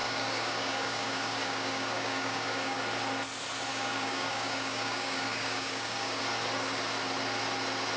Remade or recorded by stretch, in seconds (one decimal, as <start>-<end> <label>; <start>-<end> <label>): 0.0-2.8 remade; 2.8-3.7 recorded; 3.7-6.2 remade; 6.2-8.0 recorded